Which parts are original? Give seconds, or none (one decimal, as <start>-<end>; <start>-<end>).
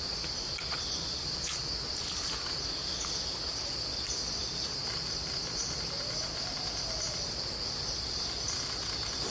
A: 0.0-9.3